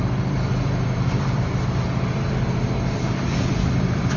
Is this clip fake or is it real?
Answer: fake